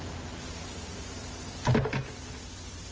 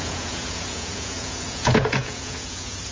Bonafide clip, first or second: first